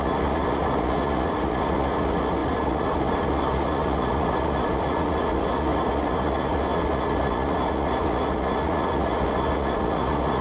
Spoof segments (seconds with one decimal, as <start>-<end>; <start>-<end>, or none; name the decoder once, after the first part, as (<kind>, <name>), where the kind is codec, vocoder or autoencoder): 0.0-10.4 (vocoder, Vocos)